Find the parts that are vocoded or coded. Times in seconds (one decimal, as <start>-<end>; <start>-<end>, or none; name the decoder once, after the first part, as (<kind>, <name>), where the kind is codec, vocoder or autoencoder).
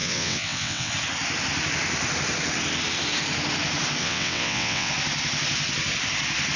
0.0-0.9 (vocoder, WaveNeXt); 4.0-4.9